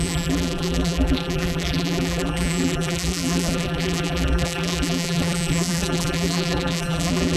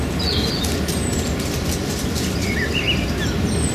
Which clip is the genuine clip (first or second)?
second